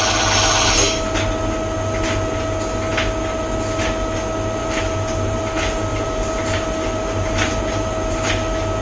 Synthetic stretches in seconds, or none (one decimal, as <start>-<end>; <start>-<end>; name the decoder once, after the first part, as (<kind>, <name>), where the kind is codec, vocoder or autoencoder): 4.6-5.4 (vocoder, BigVGAN v2); 5.9-8.3